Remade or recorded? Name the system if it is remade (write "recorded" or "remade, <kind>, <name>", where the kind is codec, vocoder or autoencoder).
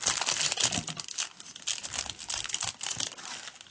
recorded